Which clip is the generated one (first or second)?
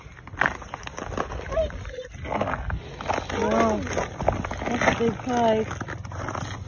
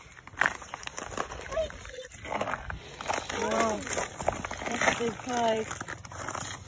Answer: second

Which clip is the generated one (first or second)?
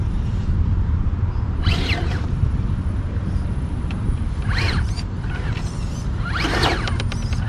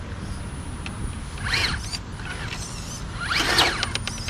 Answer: first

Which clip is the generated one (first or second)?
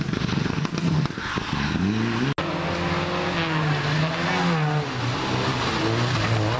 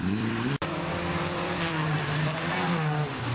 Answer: second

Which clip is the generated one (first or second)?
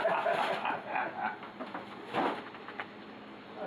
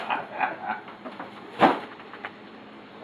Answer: second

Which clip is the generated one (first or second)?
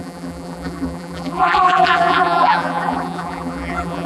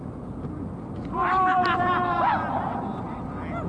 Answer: first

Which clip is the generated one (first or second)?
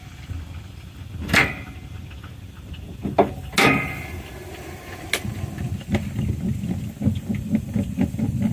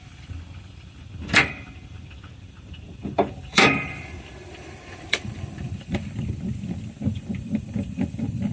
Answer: second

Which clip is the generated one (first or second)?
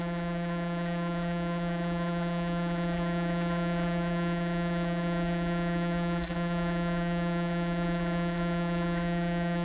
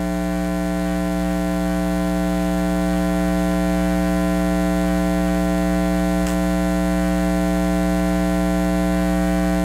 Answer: first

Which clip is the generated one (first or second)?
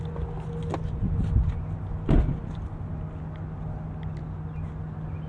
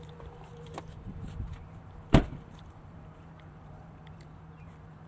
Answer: second